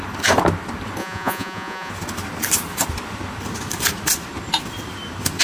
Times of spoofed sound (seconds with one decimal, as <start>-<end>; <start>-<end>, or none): 1.0-1.9